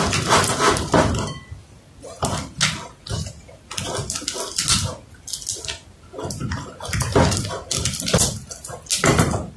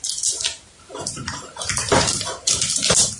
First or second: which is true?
first